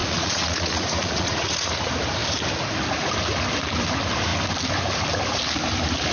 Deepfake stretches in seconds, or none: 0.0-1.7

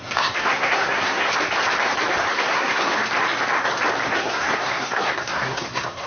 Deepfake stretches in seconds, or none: 0.0-1.3; 2.3-2.9; 4.1-6.1

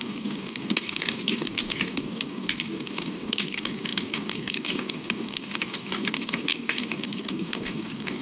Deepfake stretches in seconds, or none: 0.0-8.2

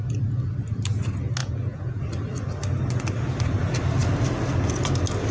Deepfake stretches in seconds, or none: 1.4-2.0